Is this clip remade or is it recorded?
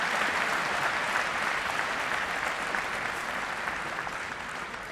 recorded